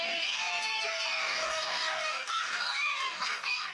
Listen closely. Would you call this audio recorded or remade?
remade